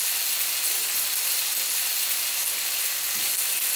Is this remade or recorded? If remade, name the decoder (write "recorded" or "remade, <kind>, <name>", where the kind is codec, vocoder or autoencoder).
recorded